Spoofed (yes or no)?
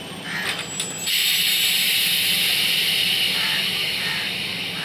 no